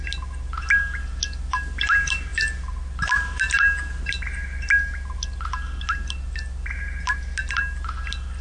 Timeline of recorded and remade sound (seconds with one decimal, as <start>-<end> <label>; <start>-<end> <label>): 0.0-8.4 recorded